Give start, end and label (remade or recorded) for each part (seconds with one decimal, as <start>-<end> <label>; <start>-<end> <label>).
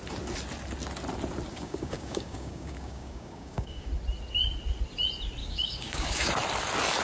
0.0-1.5 recorded; 1.5-3.9 remade; 3.9-5.4 recorded; 5.4-6.3 remade; 6.3-7.0 recorded